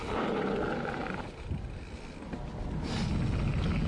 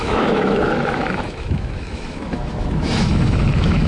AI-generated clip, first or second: second